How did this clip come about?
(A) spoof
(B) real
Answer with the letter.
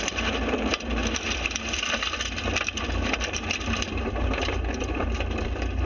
A